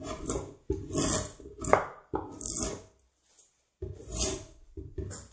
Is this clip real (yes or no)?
yes